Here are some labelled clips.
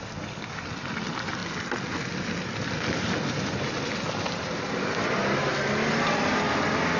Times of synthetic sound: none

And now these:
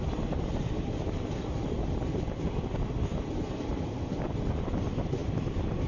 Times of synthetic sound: none

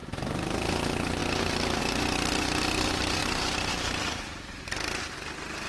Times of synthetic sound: 0.0-0.7 (vocoder, BigVGAN v2); 1.2-1.8; 3.2-4.0

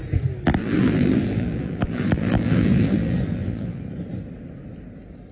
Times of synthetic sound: 0.6-3.8 (vocoder, BigVGAN v2)

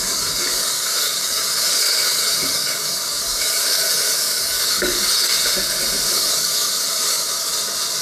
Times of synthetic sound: 0.0-5.3 (codec, DAC); 6.0-7.5